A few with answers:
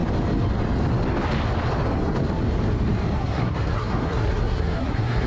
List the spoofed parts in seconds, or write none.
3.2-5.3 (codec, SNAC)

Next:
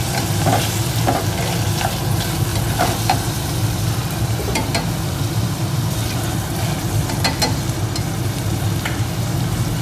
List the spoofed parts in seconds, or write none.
2.5-7.1 (vocoder, BigVGAN v2)

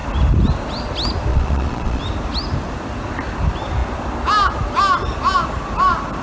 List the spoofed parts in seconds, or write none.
1.3-2.0 (vocoder, Vocos)

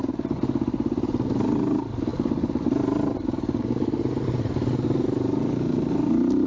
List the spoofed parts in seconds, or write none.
none

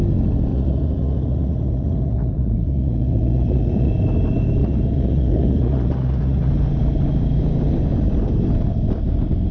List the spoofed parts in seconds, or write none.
0.5-3.9 (vocoder, Vocos); 4.6-6.5

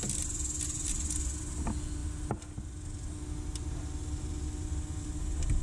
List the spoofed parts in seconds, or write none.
none

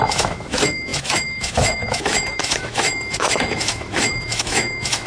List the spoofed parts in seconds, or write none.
0.0-5.1 (autoencoder, DAC-VAE)